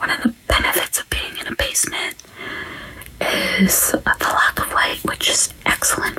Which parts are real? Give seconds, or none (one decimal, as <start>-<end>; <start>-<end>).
none